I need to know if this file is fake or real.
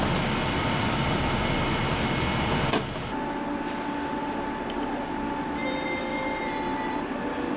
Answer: real